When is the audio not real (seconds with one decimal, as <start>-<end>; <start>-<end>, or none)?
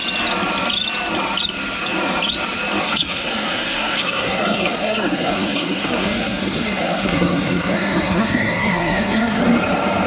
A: 2.8-9.4